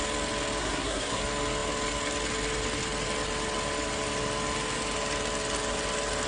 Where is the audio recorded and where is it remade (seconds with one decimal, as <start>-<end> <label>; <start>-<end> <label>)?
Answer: 0.0-0.6 recorded; 0.6-1.2 remade; 1.2-6.3 recorded